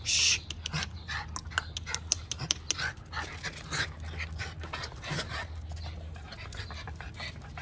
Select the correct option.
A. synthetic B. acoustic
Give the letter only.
B